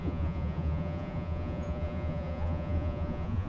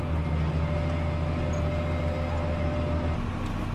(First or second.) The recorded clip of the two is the second